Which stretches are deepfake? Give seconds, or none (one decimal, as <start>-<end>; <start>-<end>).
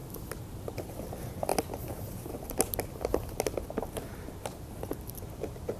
none